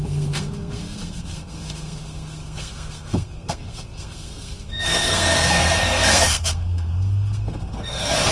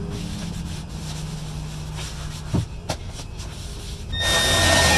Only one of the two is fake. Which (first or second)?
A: first